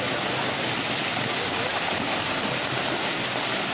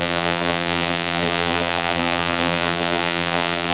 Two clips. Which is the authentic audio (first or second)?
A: first